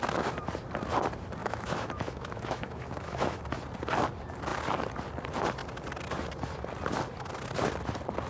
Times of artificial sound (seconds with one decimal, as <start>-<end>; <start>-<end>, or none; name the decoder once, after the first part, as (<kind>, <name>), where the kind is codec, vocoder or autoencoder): 1.4-3.4 (autoencoder, DAC-VAE)